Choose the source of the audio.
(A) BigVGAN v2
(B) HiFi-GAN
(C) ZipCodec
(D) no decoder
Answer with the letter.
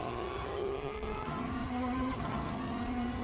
B